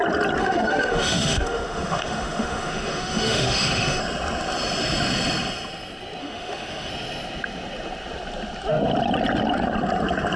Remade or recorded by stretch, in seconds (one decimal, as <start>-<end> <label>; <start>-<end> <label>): 0.0-0.4 recorded; 0.4-4.0 remade; 4.0-6.2 recorded; 6.2-6.9 remade; 6.9-10.4 recorded